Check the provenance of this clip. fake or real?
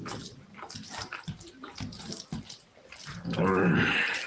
real